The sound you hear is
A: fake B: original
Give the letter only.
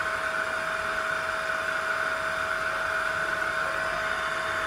B